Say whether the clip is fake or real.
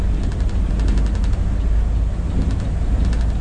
real